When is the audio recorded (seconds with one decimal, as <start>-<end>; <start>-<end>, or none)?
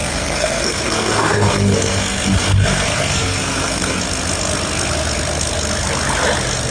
4.0-6.7